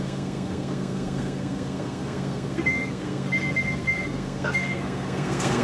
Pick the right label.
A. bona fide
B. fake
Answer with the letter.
B